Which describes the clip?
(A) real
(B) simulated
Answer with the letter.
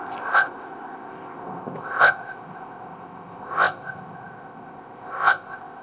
B